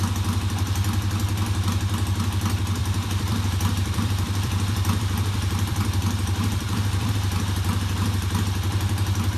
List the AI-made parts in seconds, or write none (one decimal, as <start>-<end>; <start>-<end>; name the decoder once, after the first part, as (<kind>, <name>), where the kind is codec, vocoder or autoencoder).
2.8-7.1 (vocoder, BigVGAN v2)